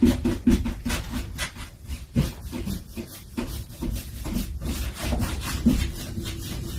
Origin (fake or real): fake